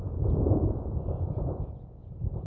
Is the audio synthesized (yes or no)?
yes